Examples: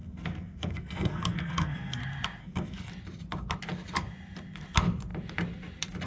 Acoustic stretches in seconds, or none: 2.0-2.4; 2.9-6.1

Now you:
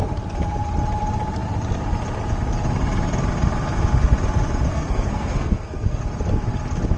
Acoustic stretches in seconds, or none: 0.0-4.7; 6.0-7.0

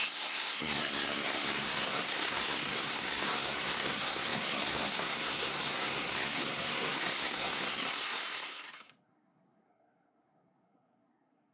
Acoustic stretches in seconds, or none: none

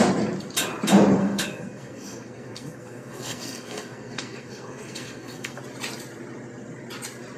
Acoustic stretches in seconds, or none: 0.0-1.2; 5.6-7.4

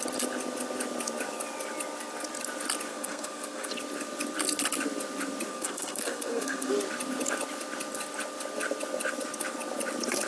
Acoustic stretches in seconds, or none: 0.0-2.9; 3.7-5.5; 6.7-10.3

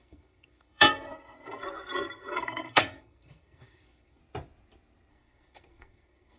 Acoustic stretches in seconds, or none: 4.2-5.1

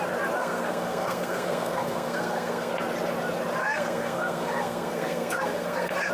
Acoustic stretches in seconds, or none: 0.0-0.4; 2.7-3.6

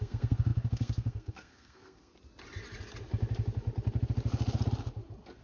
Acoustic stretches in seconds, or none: 2.1-5.4